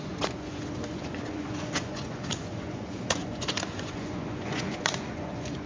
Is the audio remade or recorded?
remade